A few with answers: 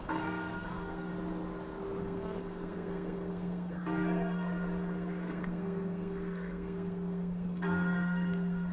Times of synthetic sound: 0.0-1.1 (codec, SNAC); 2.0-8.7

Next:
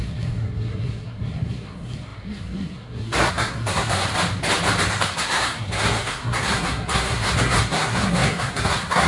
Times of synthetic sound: 0.0-4.1 (codec, SNAC); 4.9-9.1